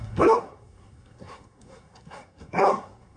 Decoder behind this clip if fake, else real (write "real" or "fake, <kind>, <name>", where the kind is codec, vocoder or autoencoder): fake, codec, SNAC